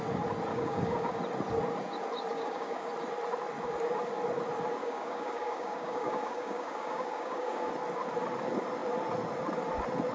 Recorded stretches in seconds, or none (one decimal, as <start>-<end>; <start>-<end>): 0.0-0.5; 1.2-2.3; 2.9-4.8; 7.7-10.1